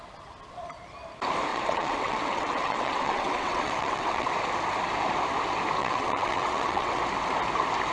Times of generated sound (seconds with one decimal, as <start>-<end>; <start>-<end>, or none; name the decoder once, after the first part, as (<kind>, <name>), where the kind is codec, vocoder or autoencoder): 1.5-4.3 (vocoder, WaveNeXt); 5.8-7.0